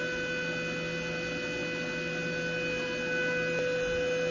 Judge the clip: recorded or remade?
recorded